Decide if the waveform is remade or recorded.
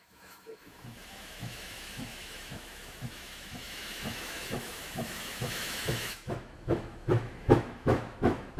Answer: remade